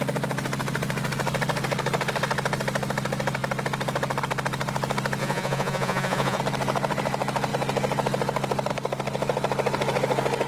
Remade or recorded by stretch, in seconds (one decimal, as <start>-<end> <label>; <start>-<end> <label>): 0.0-5.2 recorded; 5.2-6.4 remade; 6.4-10.5 recorded